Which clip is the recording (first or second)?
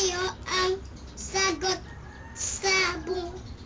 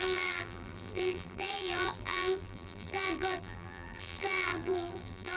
first